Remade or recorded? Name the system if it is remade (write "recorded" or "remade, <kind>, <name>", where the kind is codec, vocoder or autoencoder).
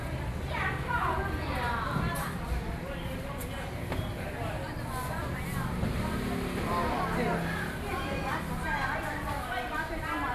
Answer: recorded